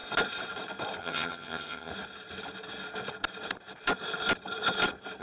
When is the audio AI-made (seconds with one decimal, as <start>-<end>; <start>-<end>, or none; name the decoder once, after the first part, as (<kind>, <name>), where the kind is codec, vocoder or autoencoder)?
1.0-1.9 (vocoder, HiFi-GAN)